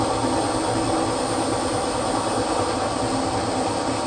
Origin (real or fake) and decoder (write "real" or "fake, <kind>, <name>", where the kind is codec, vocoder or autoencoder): real